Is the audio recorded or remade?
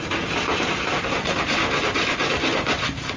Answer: remade